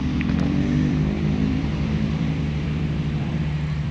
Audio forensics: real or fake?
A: fake